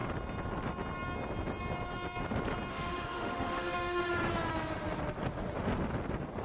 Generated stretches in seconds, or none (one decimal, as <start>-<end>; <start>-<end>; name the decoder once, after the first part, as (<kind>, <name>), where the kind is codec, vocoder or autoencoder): 2.7-4.0 (autoencoder, DAC-VAE)